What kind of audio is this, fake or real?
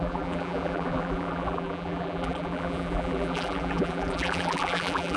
fake